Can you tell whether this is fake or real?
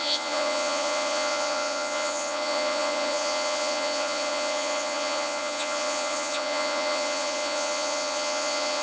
fake